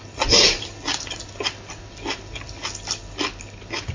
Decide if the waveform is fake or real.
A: real